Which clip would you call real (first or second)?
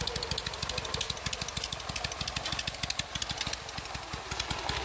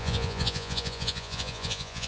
first